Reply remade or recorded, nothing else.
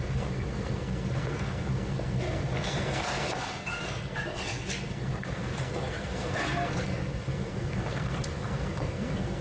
remade